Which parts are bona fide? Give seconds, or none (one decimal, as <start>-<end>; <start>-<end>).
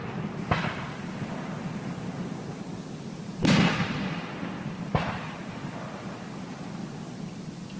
0.0-7.8